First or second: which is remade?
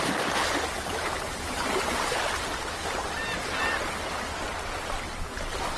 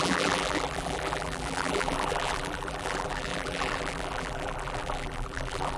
second